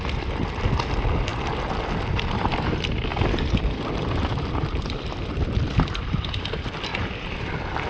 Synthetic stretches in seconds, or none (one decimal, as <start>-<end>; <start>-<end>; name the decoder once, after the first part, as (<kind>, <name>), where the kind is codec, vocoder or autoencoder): 0.0-1.3 (vocoder, BigVGAN v2); 2.0-3.1; 3.8-7.9